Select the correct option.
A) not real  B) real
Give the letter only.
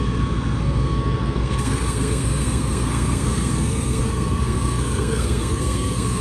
A